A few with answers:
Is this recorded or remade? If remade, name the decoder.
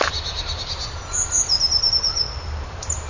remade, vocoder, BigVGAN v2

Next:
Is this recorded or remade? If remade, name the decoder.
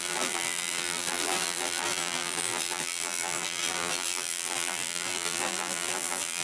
remade, vocoder, BigVGAN v2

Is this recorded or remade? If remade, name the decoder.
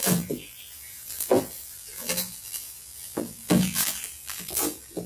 remade, vocoder, BigVGAN v2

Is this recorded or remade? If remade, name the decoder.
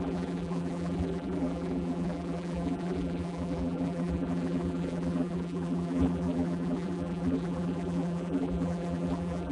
remade, vocoder, BigVGAN v2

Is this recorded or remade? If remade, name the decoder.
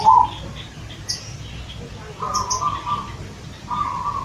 recorded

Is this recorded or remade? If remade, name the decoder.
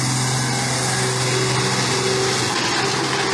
recorded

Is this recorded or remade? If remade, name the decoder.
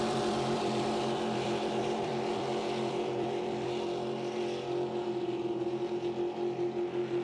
remade, vocoder, BigVGAN v2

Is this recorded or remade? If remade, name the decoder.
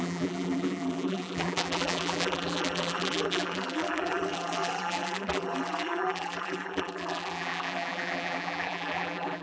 remade, vocoder, BigVGAN v2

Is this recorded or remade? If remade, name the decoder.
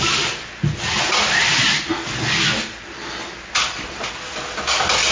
recorded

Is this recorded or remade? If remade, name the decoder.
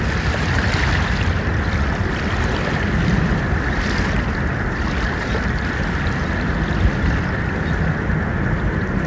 remade, vocoder, BigVGAN v2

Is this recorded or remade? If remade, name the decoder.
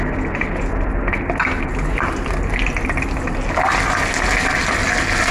recorded